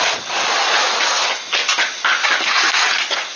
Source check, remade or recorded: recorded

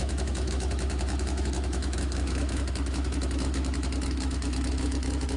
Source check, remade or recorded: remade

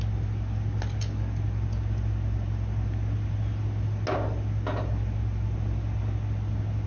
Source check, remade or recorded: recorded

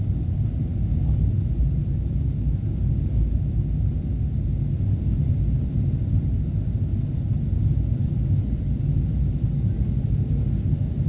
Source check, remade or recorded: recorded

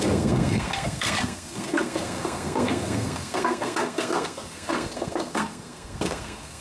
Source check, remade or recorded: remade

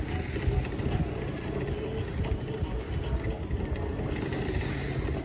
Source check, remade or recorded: recorded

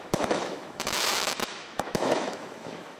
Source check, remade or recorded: remade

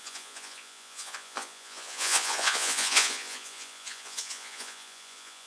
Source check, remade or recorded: remade